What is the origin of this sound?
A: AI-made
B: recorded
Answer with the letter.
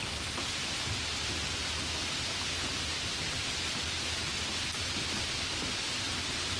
B